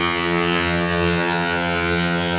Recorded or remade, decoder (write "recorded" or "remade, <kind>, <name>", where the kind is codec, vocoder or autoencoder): remade, vocoder, HiFi-GAN